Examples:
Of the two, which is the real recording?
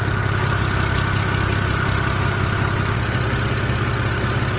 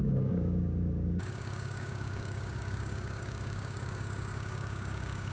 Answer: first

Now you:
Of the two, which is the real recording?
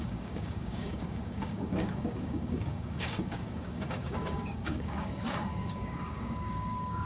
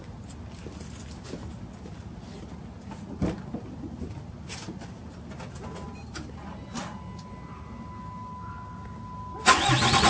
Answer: second